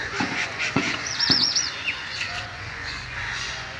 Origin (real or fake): fake